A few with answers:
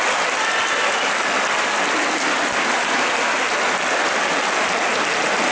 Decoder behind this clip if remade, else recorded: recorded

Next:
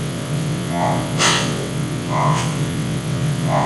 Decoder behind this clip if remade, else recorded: remade, vocoder, WaveNeXt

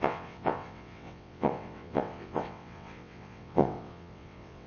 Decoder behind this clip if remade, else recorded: remade, vocoder, WaveNeXt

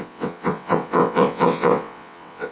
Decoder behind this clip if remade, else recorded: remade, vocoder, WaveNeXt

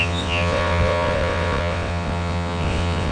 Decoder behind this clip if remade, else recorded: remade, vocoder, WaveNeXt